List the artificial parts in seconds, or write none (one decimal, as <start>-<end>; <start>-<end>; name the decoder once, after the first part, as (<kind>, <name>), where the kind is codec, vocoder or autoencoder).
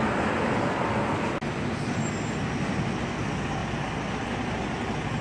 none